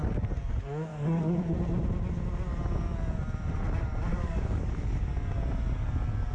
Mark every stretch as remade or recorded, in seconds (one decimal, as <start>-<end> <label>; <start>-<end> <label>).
0.0-0.9 recorded; 0.9-1.4 remade; 1.4-4.1 recorded; 4.1-5.1 remade; 5.1-6.3 recorded